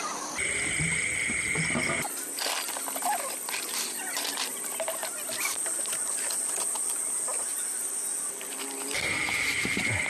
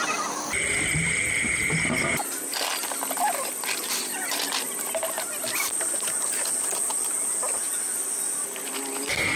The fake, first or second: first